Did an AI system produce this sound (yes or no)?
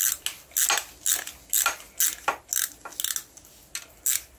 no